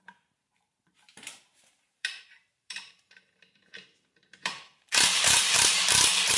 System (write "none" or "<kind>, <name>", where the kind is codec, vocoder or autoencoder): vocoder, BigVGAN v2